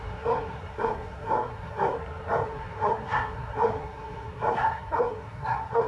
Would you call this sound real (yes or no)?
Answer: no